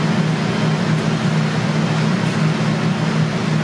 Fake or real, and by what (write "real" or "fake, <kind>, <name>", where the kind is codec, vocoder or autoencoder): real